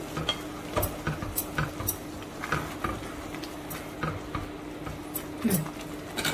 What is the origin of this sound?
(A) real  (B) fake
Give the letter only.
A